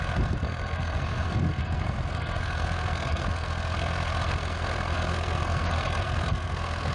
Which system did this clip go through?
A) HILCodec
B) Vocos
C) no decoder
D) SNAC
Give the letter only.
D